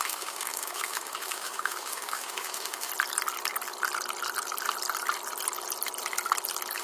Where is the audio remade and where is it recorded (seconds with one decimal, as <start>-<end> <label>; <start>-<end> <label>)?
0.0-2.9 remade; 2.9-6.8 recorded